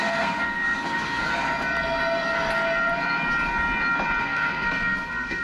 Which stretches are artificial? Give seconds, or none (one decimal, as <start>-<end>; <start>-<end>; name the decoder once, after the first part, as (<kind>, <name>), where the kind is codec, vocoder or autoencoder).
0.0-1.3 (codec, SNAC); 4.2-5.4